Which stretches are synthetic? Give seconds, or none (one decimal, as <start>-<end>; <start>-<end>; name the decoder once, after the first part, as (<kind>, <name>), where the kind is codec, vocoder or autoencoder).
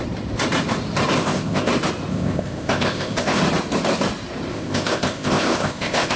1.2-1.7 (codec, ZipCodec); 2.1-3.4; 4.5-6.2